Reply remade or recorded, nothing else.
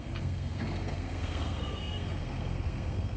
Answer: remade